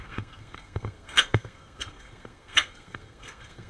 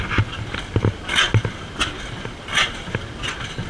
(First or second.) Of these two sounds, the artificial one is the first